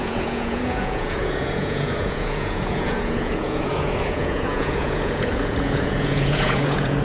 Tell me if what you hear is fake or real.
fake